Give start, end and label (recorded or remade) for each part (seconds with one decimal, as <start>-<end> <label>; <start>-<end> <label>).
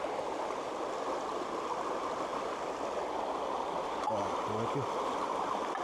0.0-5.8 recorded